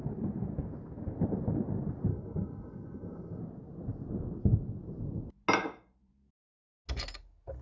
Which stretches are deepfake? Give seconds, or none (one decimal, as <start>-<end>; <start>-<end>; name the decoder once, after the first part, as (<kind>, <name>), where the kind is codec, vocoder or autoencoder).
2.1-3.4 (codec, SNAC)